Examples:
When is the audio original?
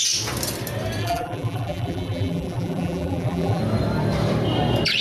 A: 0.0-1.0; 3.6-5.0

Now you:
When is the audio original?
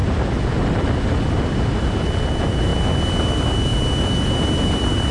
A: 2.7-3.3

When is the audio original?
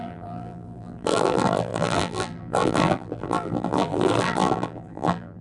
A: none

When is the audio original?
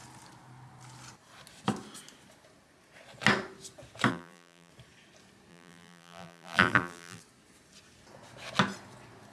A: 0.0-4.1; 4.7-5.5; 7.2-9.3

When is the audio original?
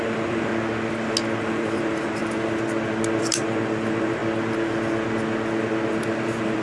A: 0.5-1.4; 2.2-3.2; 4.2-5.9